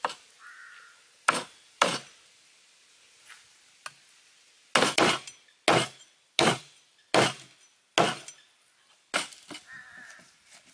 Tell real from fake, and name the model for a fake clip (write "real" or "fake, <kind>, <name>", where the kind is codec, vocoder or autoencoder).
real